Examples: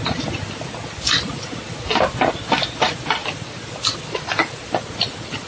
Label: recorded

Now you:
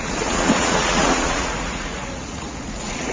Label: remade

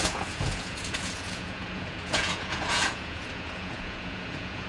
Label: remade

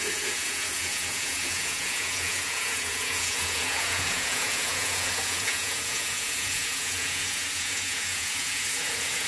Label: remade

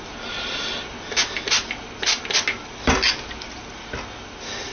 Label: recorded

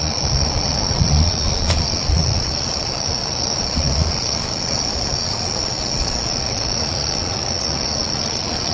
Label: remade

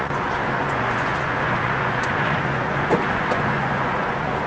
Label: remade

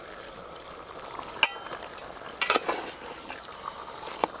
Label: recorded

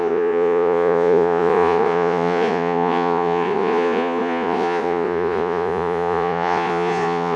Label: remade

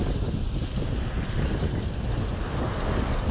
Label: recorded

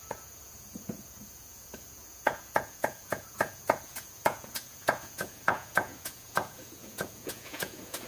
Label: remade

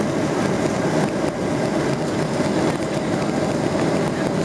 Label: recorded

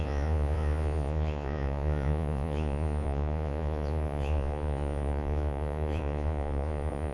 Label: remade